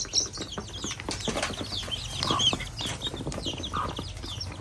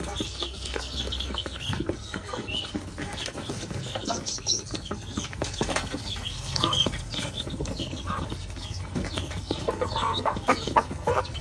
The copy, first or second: second